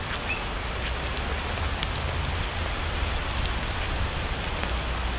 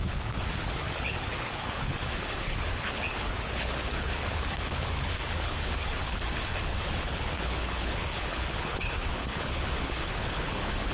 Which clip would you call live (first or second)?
first